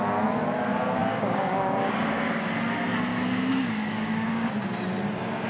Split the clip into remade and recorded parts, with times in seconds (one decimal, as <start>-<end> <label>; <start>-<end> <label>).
0.0-1.0 recorded; 1.0-2.5 remade; 2.5-3.1 recorded; 3.1-4.5 remade; 4.5-5.5 recorded